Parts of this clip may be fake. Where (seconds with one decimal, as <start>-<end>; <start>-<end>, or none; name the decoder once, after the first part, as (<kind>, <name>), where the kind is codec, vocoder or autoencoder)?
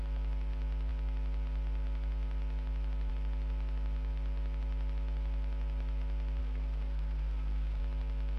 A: 6.4-7.8 (codec, SNAC)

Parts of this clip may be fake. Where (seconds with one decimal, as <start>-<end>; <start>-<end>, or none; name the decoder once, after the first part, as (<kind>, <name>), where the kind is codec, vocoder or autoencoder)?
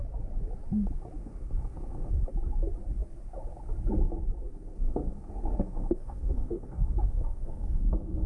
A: 1.2-2.1 (codec, SNAC); 4.6-8.3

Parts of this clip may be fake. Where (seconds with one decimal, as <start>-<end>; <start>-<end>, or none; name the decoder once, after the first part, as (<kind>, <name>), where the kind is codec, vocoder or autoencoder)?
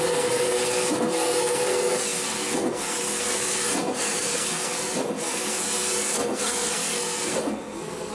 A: 0.0-8.1 (codec, SNAC)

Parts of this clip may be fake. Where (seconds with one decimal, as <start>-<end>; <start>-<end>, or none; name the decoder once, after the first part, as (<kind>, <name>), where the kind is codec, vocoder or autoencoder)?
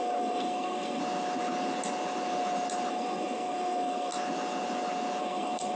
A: 0.0-1.0 (codec, SNAC); 2.9-4.1; 5.2-5.8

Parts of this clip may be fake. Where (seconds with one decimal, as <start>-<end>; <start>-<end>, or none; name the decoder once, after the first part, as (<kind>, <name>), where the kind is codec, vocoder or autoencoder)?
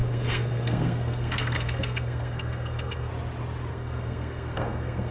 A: 0.0-3.1 (codec, SNAC); 3.7-5.1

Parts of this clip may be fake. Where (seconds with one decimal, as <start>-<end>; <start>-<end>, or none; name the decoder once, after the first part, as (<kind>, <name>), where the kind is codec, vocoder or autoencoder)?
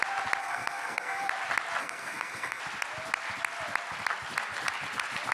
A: 0.4-1.3 (codec, SNAC); 1.8-2.6